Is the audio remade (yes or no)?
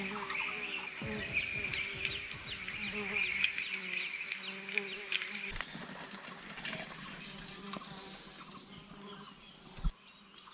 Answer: no